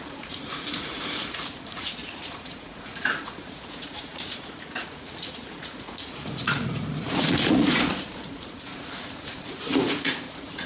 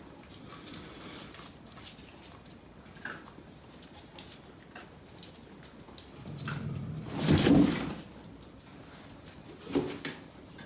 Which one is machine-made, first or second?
first